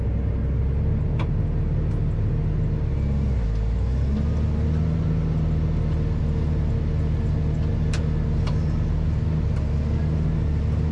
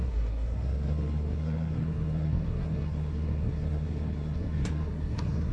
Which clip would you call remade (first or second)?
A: second